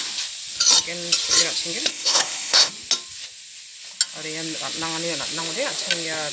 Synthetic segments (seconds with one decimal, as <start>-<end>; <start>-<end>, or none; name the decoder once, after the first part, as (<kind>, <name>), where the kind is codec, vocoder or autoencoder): 1.9-2.7 (codec, ZipCodec)